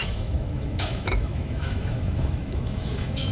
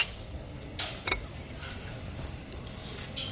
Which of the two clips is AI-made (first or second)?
first